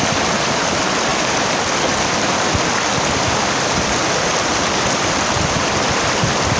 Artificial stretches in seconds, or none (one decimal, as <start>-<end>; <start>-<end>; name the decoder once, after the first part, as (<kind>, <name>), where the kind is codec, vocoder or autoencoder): 0.0-1.1 (vocoder, BigVGAN v2); 5.1-6.6